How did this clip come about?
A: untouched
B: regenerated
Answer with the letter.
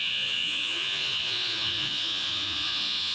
B